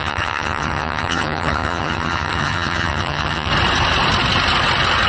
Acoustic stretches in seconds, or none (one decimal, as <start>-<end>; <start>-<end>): 3.5-5.1